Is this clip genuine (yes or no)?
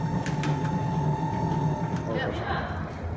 yes